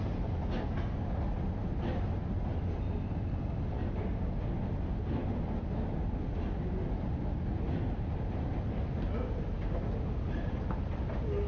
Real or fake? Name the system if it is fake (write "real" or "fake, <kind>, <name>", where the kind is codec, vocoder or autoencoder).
real